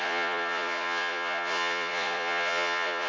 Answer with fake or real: fake